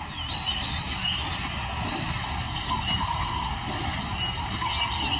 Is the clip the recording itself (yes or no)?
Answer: yes